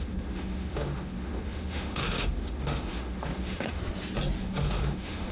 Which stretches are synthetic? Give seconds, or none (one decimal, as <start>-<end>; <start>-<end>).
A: 0.0-3.8; 4.4-5.3